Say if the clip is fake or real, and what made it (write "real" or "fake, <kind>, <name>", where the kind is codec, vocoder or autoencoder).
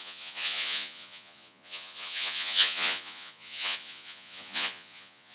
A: fake, vocoder, Vocos